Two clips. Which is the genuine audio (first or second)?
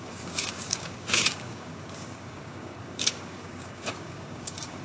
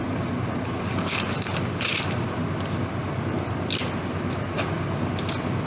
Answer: second